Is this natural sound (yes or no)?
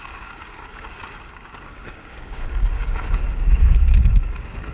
no